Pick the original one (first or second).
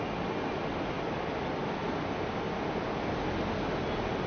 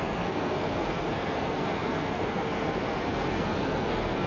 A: first